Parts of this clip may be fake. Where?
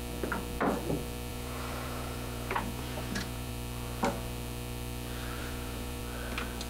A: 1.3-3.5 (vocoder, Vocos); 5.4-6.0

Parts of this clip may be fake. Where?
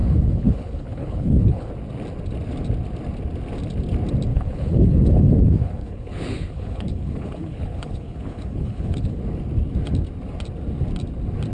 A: 0.0-1.7 (codec, HILCodec); 4.3-9.2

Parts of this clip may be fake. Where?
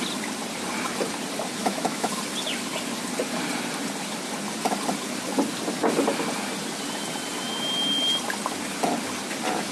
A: 1.6-2.1 (autoencoder, DAC-VAE)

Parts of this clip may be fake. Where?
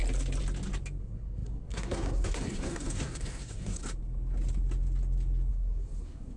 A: 1.0-3.8 (codec, SNAC); 5.5-6.4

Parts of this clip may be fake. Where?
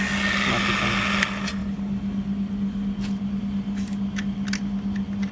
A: none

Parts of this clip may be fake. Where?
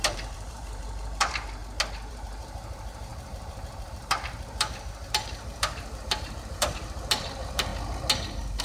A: 0.0-1.6 (vocoder, BigVGAN v2); 2.1-7.7